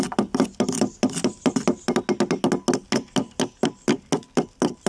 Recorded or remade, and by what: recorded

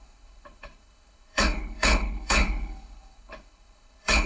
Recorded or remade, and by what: remade, codec, HILCodec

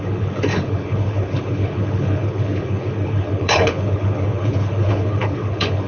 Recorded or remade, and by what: remade, codec, HILCodec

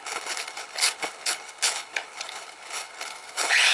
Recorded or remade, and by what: remade, codec, HILCodec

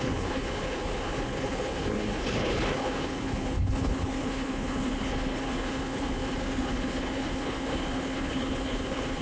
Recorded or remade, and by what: remade, codec, HILCodec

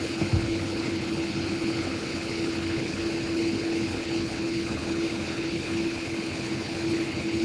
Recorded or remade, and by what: remade, codec, HILCodec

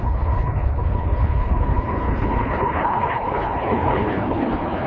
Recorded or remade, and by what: remade, codec, HILCodec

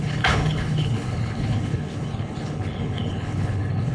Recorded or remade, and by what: remade, codec, HILCodec